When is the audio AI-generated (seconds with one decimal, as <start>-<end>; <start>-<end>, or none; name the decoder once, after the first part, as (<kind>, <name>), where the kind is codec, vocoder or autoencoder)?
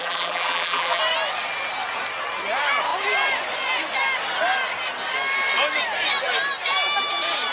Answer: 0.0-1.0 (vocoder, BigVGAN v2)